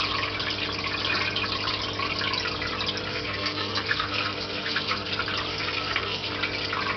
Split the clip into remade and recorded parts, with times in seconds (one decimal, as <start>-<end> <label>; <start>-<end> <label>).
0.0-3.1 recorded; 3.1-5.1 remade; 5.1-5.5 recorded; 5.5-6.3 remade; 6.3-7.0 recorded